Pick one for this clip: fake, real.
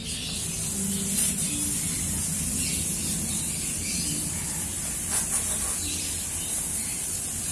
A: real